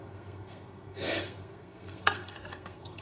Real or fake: fake